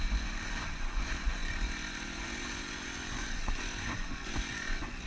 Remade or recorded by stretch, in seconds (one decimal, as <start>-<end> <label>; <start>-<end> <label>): 0.0-5.1 remade